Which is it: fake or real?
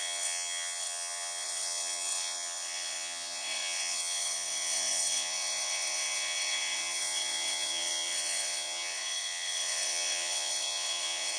fake